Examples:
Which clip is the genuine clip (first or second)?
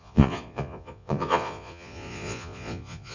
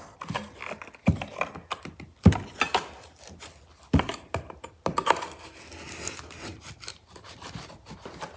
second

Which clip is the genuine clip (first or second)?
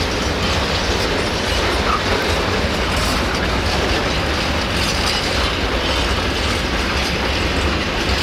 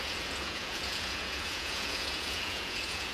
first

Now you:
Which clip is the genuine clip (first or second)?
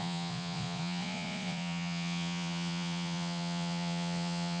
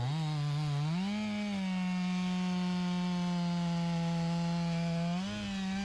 second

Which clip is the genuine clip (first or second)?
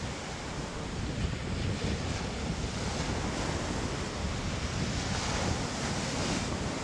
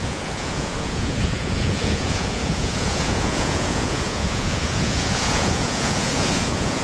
first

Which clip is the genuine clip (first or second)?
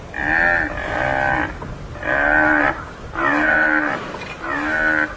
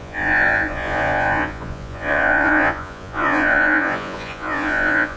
first